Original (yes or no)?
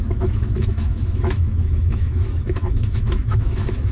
no